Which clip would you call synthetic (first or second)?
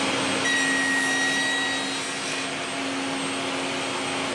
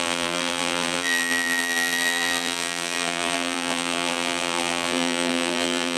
second